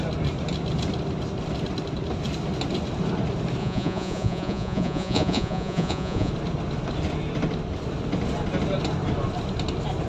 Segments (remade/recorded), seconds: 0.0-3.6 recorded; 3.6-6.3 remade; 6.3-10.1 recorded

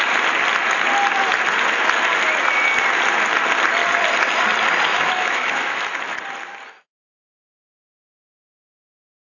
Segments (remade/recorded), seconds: 0.0-4.9 recorded; 4.9-5.8 remade; 5.8-9.4 recorded

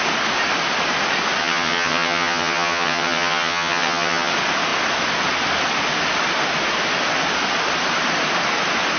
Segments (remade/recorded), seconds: 0.0-1.4 recorded; 1.4-4.3 remade; 4.3-9.0 recorded

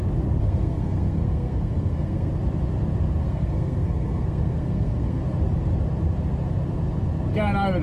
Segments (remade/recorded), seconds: 0.0-0.4 recorded; 0.4-2.3 remade; 2.3-3.2 recorded; 3.2-5.2 remade; 5.2-7.8 recorded

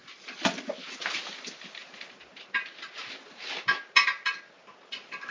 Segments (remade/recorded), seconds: 0.0-5.3 recorded